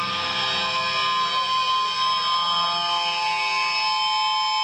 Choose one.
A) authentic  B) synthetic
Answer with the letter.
A